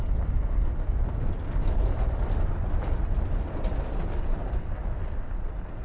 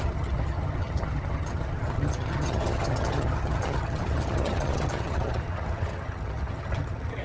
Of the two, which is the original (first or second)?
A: first